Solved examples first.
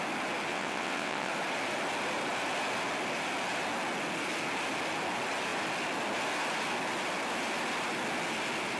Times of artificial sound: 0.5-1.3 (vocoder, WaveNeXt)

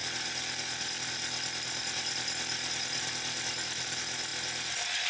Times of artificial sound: none

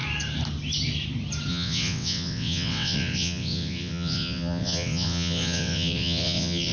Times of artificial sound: 1.5-6.7 (vocoder, WaveNeXt)

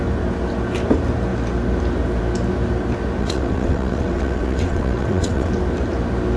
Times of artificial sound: 3.2-5.5 (vocoder, WaveNeXt)

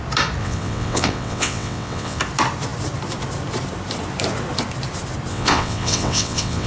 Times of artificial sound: 0.4-2.2 (vocoder, WaveNeXt); 5.3-6.7

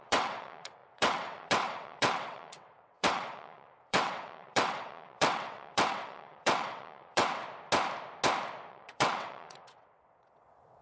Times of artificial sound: 0.0-7.4 (vocoder, WaveNeXt); 8.7-10.8